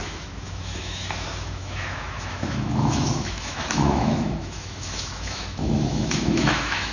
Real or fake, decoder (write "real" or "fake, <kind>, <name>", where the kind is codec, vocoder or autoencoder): fake, autoencoder, DAC-VAE